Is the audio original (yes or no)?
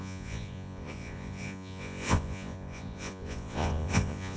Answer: no